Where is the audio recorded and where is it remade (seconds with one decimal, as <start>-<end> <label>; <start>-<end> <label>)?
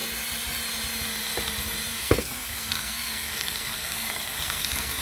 0.0-1.9 recorded; 1.9-5.0 remade